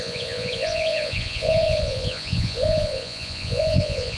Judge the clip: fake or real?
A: fake